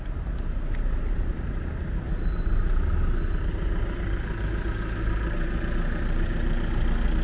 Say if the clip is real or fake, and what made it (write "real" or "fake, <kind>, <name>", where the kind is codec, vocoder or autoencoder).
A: real